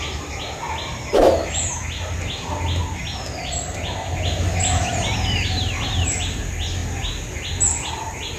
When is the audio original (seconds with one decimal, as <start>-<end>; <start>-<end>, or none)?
0.0-8.4